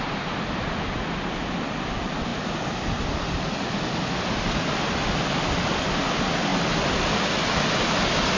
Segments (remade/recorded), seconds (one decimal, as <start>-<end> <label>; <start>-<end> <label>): 0.0-8.4 recorded